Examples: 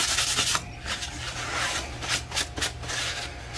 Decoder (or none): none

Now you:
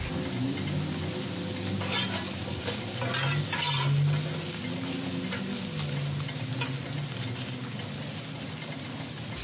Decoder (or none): none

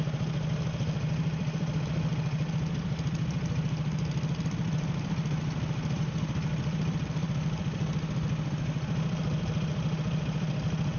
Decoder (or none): none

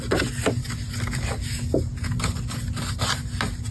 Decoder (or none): none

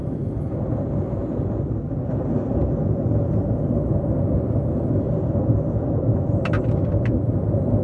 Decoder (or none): none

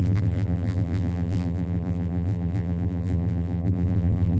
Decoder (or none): vocoder, BigVGAN v2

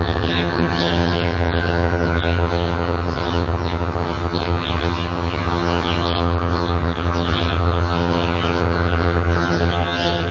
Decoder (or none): vocoder, HiFi-GAN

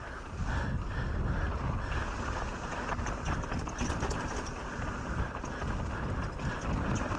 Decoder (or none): none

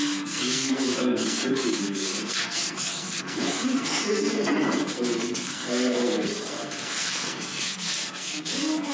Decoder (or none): codec, SNAC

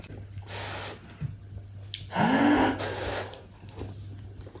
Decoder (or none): none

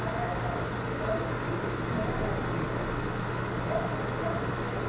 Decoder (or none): none